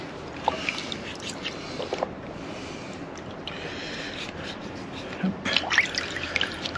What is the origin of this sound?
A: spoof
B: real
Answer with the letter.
B